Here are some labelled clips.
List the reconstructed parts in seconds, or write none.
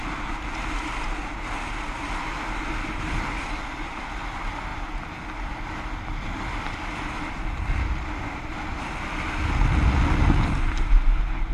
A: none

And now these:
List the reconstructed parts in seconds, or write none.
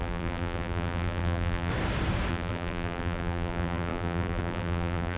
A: 0.0-1.7 (vocoder, BigVGAN v2); 2.3-5.2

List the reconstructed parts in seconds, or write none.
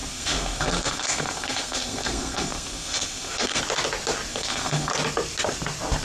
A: 0.0-3.6 (codec, SNAC); 4.3-4.9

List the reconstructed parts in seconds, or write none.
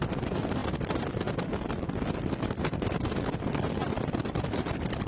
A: 3.8-5.1 (vocoder, BigVGAN v2)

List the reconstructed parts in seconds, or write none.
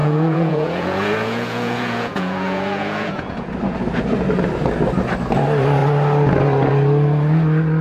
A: 0.0-3.5 (vocoder, Vocos)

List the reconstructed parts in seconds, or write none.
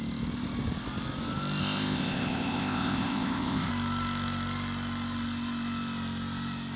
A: 1.6-3.7 (codec, ZipCodec)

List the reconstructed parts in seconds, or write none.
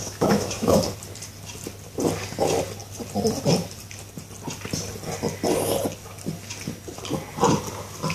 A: 0.0-0.8 (autoencoder, DAC-VAE)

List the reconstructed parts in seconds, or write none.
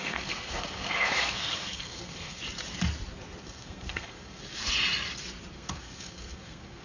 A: 0.0-2.4 (codec, SNAC); 3.4-4.6; 5.5-6.8